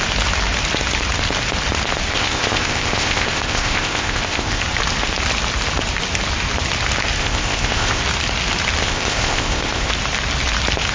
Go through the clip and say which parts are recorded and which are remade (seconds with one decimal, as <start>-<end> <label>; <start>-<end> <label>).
0.0-2.1 recorded; 2.1-4.6 remade; 4.6-7.2 recorded; 7.2-8.0 remade; 8.0-8.8 recorded; 8.8-9.9 remade; 9.9-10.9 recorded